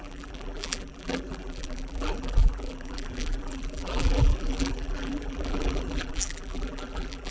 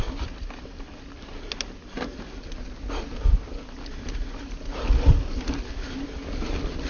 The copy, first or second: first